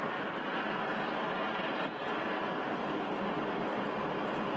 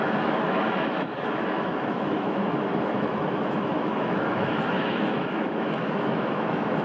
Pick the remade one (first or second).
second